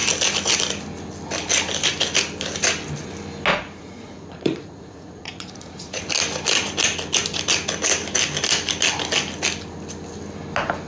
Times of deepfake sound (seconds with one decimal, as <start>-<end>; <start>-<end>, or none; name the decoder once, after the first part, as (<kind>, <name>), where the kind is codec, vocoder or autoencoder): 3.5-6.0 (vocoder, Vocos)